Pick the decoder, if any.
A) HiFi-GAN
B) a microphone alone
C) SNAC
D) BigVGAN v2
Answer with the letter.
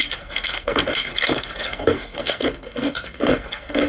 C